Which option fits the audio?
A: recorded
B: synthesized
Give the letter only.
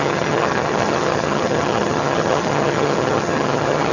B